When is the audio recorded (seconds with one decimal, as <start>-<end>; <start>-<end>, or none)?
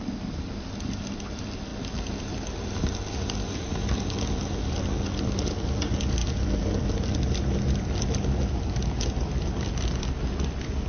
0.0-10.9